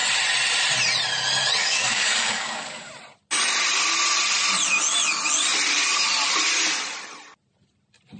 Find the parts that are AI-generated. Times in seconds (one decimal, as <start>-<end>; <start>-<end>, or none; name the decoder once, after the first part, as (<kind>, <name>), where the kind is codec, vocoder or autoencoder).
1.6-2.9 (codec, DAC)